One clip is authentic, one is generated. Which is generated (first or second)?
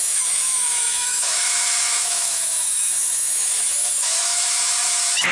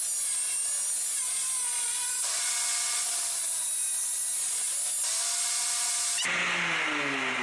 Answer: first